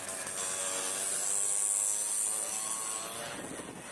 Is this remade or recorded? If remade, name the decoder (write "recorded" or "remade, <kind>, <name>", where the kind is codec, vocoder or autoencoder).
recorded